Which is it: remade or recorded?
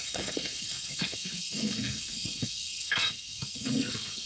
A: remade